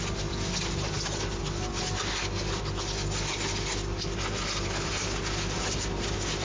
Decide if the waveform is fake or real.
real